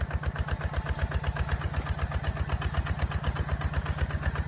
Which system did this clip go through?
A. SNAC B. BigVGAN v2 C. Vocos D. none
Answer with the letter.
D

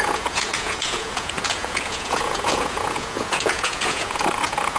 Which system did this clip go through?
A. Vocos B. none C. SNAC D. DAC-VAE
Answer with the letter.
A